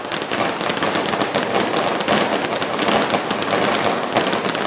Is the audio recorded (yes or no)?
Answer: yes